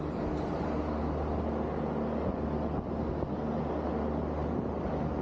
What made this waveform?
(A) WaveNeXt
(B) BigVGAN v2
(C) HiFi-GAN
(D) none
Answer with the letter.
D